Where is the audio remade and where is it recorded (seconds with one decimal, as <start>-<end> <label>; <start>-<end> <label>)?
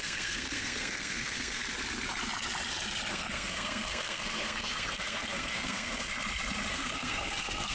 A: 0.0-1.6 remade; 1.6-3.1 recorded; 3.1-6.1 remade; 6.1-6.7 recorded; 6.7-7.7 remade